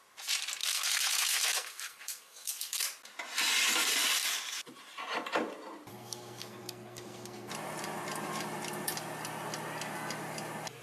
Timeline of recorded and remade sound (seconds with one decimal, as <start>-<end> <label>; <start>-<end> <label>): 0.0-0.6 recorded; 0.6-2.8 remade; 2.8-5.9 recorded; 5.9-7.5 remade; 7.5-10.8 recorded